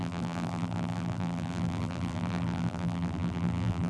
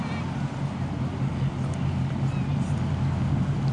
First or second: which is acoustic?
second